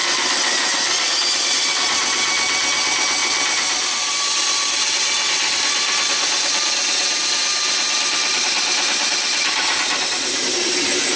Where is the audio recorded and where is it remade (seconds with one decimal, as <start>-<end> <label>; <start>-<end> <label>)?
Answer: 0.0-3.2 recorded; 3.2-3.9 remade; 3.9-7.5 recorded; 7.5-8.4 remade; 8.4-11.2 recorded